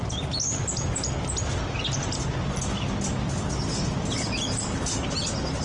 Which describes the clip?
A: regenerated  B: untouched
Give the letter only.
B